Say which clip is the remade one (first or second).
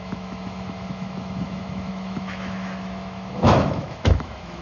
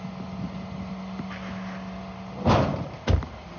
first